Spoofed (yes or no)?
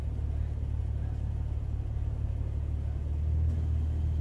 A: no